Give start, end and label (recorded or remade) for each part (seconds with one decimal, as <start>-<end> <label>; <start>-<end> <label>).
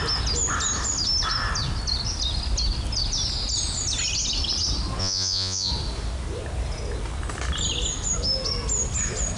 0.0-5.0 recorded; 5.0-5.7 remade; 5.7-9.4 recorded